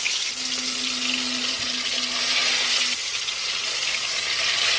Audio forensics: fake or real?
real